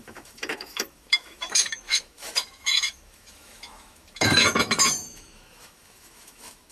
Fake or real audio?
fake